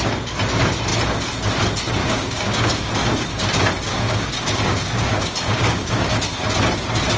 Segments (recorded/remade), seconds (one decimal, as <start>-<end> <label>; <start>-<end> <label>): 0.0-2.0 recorded; 2.0-2.9 remade; 2.9-3.9 recorded; 3.9-6.2 remade; 6.2-7.2 recorded